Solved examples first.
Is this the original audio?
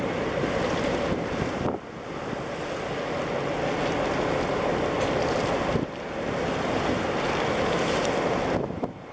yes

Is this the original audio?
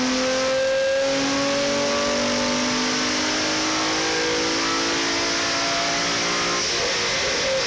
yes